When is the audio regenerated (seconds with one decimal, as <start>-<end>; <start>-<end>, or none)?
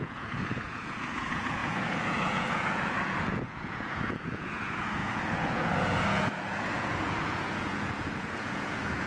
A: 0.0-9.1